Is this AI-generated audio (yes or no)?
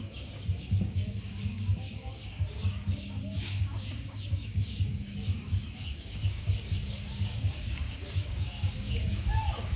yes